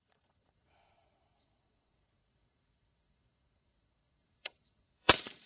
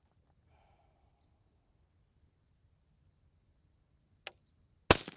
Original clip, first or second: second